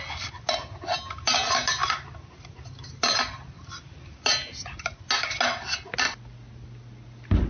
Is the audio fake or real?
real